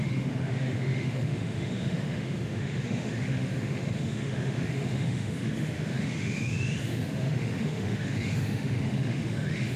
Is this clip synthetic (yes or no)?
yes